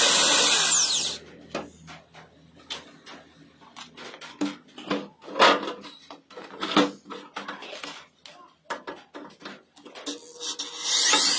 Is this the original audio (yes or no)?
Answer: yes